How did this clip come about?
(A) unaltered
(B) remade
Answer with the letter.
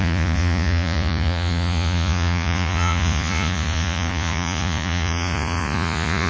B